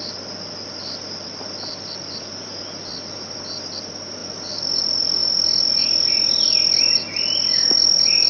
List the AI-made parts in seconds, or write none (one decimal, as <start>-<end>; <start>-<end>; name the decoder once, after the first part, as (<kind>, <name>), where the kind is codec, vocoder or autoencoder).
0.0-2.5 (vocoder, BigVGAN v2); 3.4-8.3

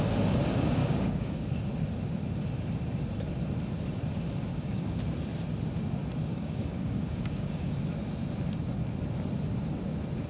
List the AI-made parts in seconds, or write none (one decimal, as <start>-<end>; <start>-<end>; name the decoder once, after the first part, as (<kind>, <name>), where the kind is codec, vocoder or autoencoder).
0.8-1.5 (codec, DAC); 4.5-5.0; 6.3-7.8

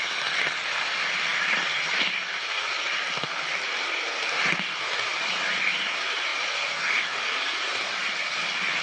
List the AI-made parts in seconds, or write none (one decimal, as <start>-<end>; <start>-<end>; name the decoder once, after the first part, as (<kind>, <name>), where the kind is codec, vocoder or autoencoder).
none